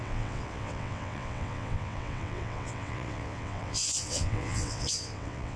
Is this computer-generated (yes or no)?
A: yes